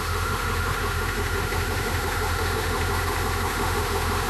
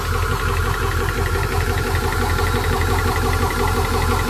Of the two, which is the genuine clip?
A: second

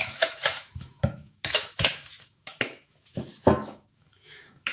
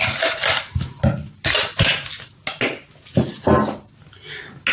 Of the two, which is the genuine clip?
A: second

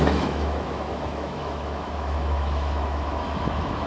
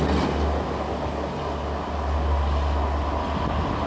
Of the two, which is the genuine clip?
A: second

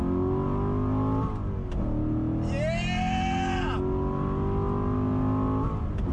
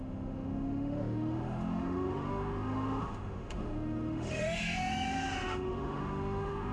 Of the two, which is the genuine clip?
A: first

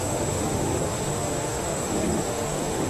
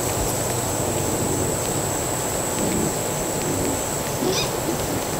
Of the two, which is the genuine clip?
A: second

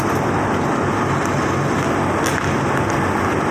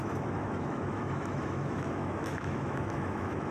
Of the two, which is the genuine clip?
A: first